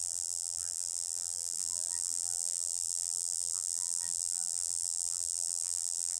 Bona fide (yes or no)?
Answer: no